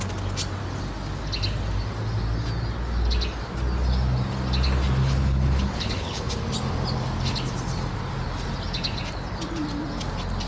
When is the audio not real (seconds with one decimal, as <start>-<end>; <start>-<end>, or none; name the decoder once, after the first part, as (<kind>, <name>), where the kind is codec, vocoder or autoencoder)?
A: 5.0-6.3 (codec, HILCodec)